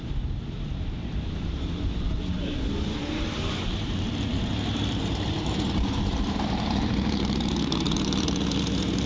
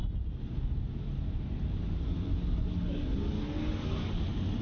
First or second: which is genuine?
second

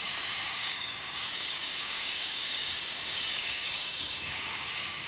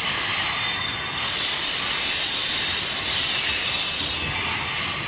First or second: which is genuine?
second